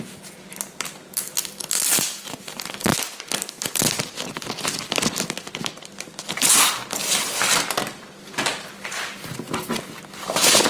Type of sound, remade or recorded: recorded